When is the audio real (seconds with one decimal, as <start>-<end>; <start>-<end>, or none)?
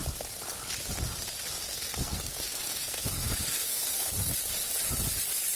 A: 0.0-1.7; 4.3-5.6